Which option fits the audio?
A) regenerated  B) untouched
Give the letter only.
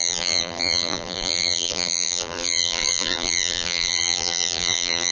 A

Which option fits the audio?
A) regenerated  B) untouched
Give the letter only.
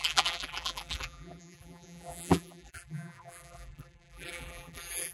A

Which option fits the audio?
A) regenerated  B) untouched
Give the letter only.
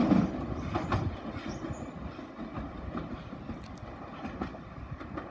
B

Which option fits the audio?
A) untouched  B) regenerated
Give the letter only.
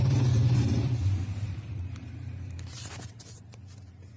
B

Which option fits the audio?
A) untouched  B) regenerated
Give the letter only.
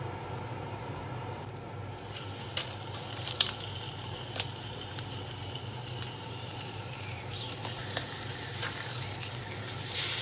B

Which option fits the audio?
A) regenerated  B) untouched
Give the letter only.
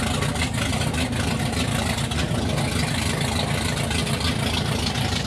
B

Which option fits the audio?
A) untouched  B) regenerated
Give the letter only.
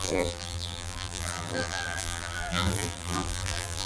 B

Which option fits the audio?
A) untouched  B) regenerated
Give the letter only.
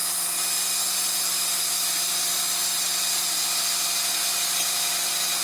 A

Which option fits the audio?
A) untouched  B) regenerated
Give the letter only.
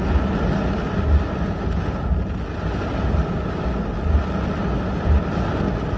A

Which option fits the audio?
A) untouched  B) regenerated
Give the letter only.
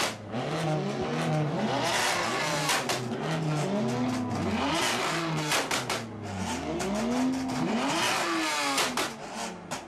A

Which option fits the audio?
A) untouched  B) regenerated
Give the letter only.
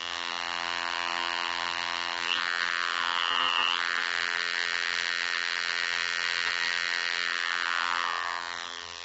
B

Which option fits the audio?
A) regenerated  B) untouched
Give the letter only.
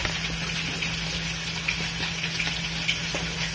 B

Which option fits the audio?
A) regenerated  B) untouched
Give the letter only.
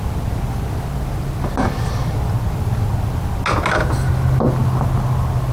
B